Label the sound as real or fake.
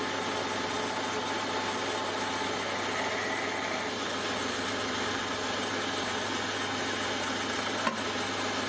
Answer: real